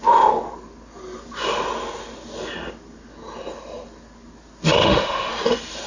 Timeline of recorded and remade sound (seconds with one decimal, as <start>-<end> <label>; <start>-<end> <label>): 0.0-4.8 recorded; 4.8-5.3 remade; 5.3-5.9 recorded